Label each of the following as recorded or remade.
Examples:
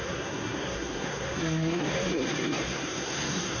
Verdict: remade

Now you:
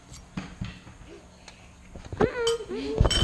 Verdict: recorded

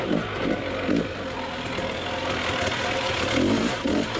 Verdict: recorded